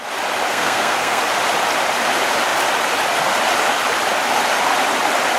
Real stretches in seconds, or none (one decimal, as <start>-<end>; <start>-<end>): 0.0-0.5; 1.2-5.4